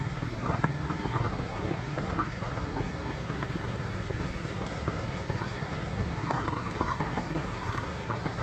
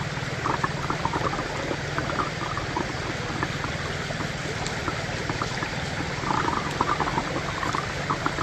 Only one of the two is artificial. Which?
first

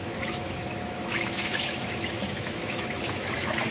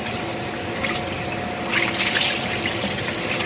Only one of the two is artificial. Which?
first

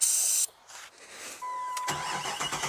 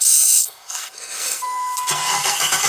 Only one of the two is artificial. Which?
second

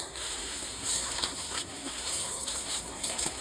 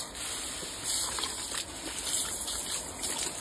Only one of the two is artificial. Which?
first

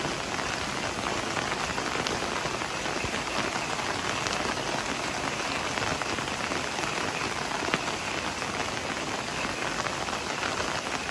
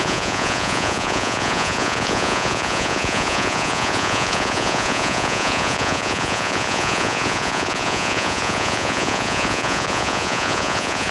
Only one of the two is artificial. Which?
second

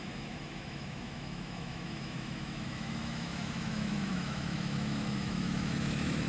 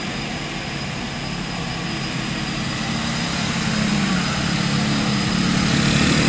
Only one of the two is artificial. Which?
first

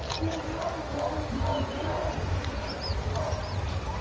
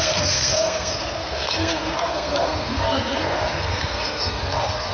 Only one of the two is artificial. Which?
second